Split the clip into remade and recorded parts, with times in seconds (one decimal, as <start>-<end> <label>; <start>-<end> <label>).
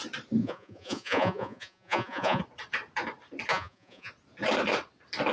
0.0-0.4 recorded; 0.4-2.4 remade; 2.4-3.5 recorded; 3.5-4.1 remade; 4.1-5.3 recorded